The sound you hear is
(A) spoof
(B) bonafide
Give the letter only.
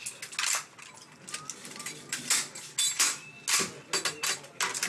B